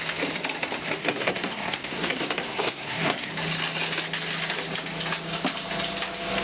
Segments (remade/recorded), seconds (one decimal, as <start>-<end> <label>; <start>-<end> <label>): 0.0-1.0 recorded; 1.0-3.3 remade; 3.3-6.4 recorded